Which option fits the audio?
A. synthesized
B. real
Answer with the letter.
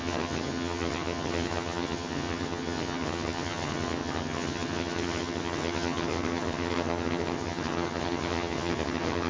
A